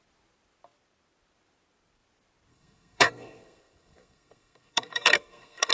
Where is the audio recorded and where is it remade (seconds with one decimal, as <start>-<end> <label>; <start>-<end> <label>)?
0.0-2.5 recorded; 2.5-5.7 remade